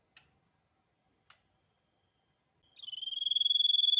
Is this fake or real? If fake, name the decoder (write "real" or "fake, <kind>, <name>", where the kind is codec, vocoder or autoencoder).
real